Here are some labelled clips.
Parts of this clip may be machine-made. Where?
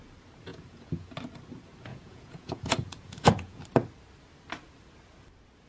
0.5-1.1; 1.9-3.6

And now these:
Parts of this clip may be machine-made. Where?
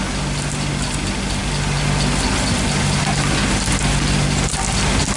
none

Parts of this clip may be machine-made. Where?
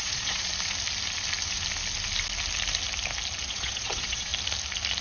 0.0-0.5; 3.5-4.3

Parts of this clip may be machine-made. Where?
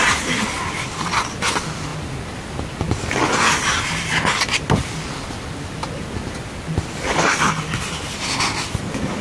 none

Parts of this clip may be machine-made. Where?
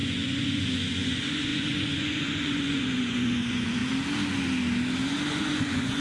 0.0-3.8; 5.3-6.0